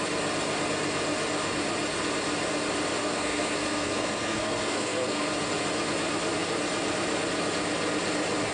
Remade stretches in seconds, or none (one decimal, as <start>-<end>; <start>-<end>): 3.0-5.3